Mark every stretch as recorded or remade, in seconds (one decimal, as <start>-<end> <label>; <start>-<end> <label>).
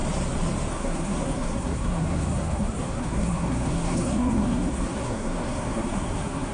0.0-0.7 recorded; 0.7-6.5 remade